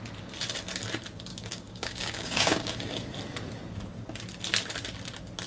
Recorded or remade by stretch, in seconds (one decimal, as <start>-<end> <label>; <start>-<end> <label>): 0.0-1.3 recorded; 1.3-3.1 remade; 3.1-5.5 recorded